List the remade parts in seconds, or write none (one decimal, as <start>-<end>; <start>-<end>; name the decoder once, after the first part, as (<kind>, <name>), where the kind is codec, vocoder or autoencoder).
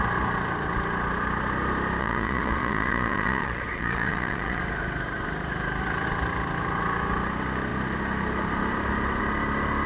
2.0-4.6 (vocoder, Vocos)